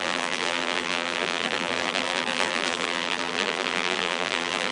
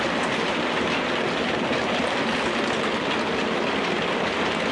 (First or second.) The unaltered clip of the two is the second